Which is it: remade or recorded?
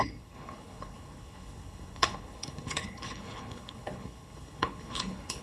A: remade